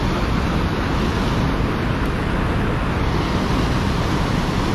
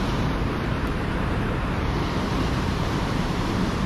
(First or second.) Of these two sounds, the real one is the first